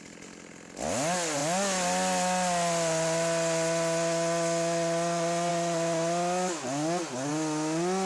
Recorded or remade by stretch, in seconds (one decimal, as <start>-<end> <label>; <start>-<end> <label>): 0.0-8.1 recorded